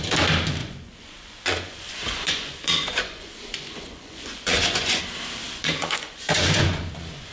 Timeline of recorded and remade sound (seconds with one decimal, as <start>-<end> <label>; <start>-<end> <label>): 0.0-0.6 recorded; 0.6-5.0 remade; 5.0-5.5 recorded; 5.5-7.3 remade